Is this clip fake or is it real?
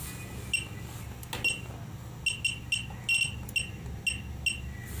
real